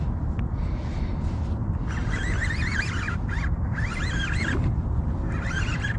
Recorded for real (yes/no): yes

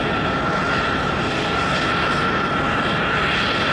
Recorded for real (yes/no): yes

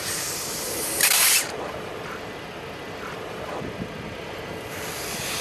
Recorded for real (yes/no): no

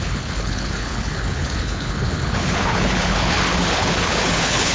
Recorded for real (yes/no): no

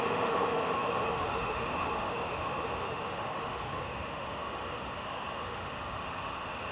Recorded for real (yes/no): no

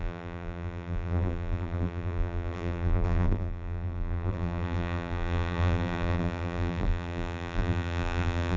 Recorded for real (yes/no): no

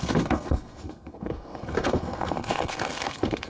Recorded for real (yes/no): no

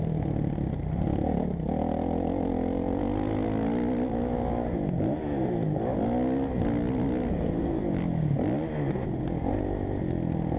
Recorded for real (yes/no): yes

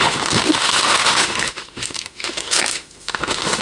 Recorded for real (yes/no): no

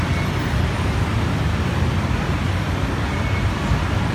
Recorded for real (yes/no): yes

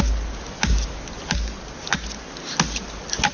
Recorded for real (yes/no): yes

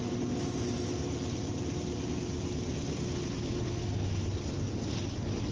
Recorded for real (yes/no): yes